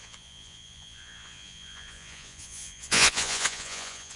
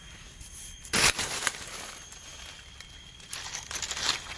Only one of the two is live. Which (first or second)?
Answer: second